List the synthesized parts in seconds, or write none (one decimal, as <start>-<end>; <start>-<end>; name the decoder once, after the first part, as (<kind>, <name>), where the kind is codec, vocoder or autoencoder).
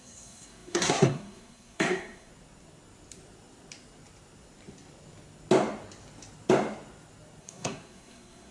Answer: 0.0-2.3 (codec, SNAC); 7.4-8.5